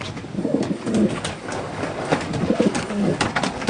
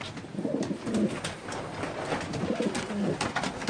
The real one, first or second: second